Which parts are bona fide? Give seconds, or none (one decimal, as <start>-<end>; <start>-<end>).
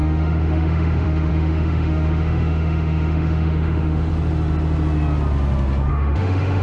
4.1-5.9